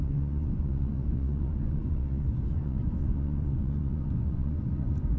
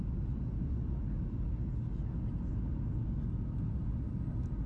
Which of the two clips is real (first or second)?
second